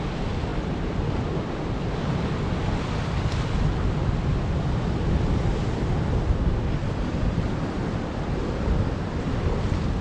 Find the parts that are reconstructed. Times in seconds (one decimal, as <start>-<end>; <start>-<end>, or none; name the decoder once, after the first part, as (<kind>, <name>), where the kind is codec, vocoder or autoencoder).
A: none